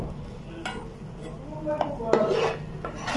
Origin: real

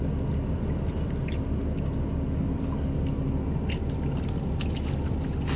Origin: real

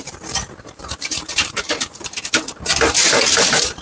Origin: fake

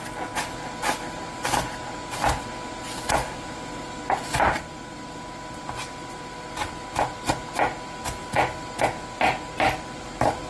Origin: real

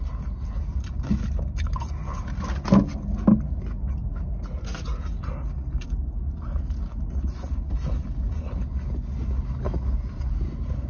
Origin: real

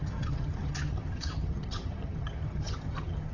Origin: fake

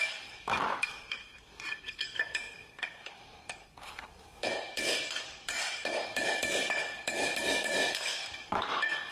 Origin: fake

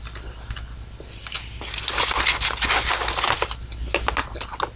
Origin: real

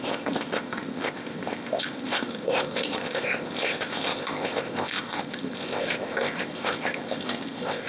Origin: fake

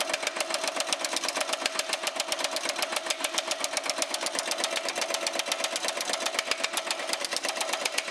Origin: real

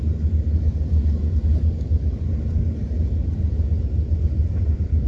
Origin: real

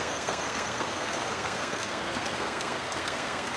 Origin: fake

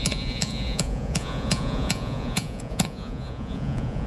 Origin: fake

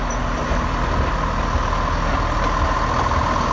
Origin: real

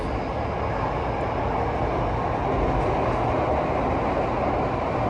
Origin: real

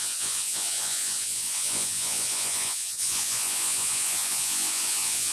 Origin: fake